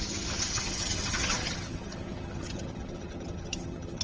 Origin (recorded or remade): remade